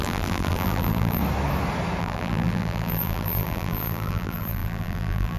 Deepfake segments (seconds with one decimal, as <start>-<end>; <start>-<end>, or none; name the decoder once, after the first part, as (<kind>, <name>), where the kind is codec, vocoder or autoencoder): 0.0-1.2 (vocoder, BigVGAN v2); 2.0-5.4